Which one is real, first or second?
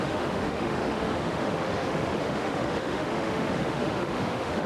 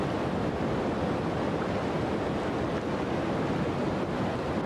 second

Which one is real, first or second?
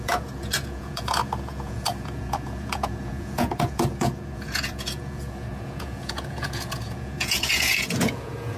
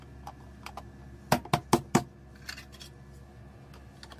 second